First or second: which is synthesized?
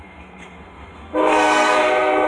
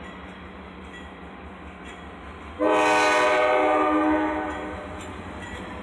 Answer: first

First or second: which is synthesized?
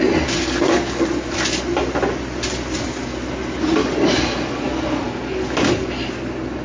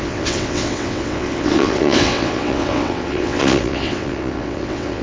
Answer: second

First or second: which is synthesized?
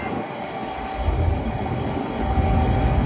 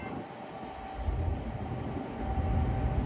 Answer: first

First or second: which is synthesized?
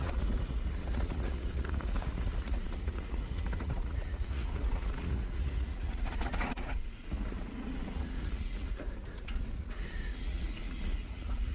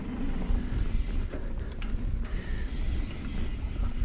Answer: first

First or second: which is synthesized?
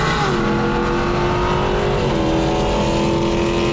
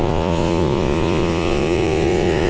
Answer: second